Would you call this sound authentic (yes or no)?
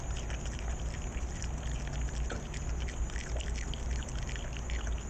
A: yes